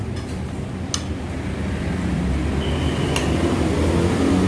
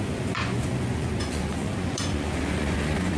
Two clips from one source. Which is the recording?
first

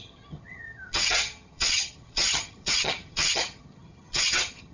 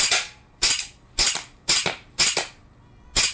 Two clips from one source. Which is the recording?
second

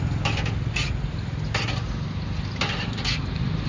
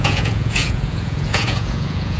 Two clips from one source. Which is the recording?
first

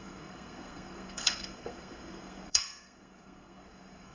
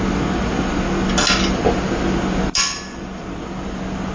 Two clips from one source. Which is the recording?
second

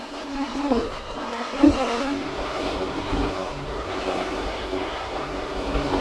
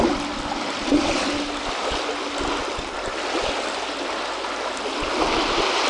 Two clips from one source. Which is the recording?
second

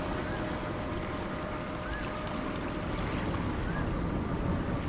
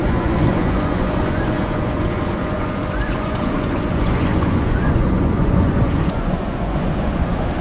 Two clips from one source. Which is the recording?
first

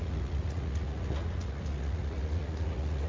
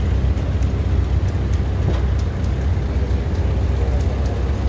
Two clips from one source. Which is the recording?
second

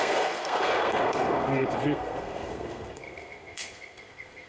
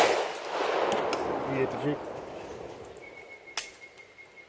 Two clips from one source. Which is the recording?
second